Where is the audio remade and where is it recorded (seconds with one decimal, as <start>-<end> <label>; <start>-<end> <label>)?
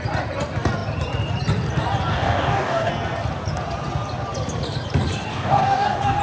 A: 0.0-2.1 recorded; 2.1-2.9 remade; 2.9-5.3 recorded; 5.3-6.2 remade